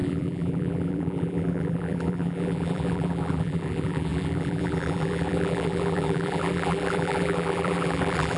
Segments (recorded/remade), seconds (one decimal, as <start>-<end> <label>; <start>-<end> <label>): 0.0-8.4 remade